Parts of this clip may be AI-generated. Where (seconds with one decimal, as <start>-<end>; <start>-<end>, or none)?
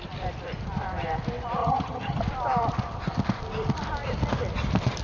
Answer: 1.6-2.2